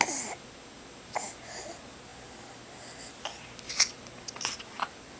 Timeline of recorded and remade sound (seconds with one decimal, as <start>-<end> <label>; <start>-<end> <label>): 0.0-5.2 recorded